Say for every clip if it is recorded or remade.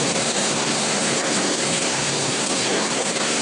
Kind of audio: remade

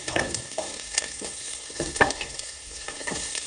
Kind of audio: remade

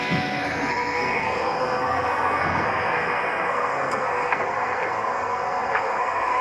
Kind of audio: remade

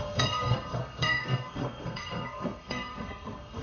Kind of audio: remade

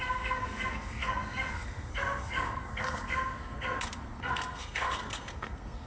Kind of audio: remade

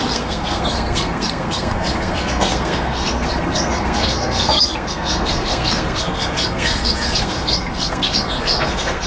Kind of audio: remade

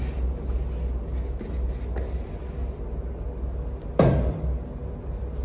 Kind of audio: recorded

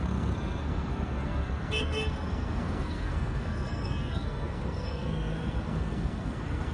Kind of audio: remade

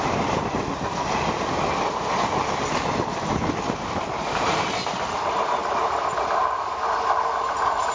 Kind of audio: recorded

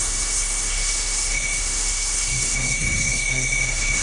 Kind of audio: remade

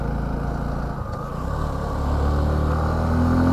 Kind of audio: recorded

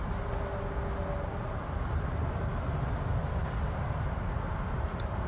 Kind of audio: recorded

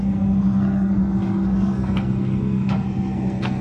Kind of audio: remade